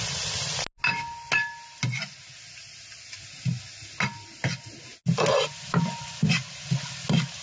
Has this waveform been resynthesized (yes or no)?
no